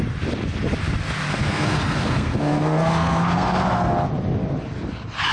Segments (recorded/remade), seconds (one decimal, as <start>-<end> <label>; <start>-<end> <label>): 0.0-1.3 recorded; 1.3-3.9 remade; 3.9-5.3 recorded